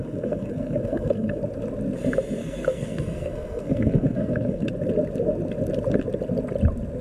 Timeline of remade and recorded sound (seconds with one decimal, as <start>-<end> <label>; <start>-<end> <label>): 0.0-1.4 remade; 1.4-2.4 recorded; 2.4-4.7 remade; 4.7-7.0 recorded